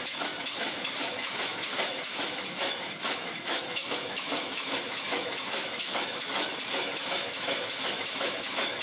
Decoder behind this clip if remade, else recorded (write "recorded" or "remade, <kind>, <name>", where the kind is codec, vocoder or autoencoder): remade, autoencoder, DAC-VAE